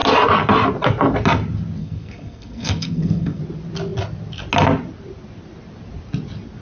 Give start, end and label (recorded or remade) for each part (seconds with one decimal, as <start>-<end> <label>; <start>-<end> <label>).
0.0-1.8 recorded; 1.8-3.4 remade; 3.4-6.6 recorded